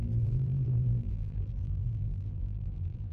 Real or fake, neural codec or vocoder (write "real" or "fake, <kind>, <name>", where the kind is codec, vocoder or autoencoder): fake, vocoder, BigVGAN v2